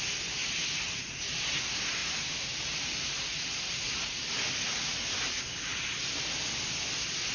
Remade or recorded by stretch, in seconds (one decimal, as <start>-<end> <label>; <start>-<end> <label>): 0.0-0.4 recorded; 0.4-1.4 remade; 1.4-2.0 recorded; 2.0-4.3 remade; 4.3-7.3 recorded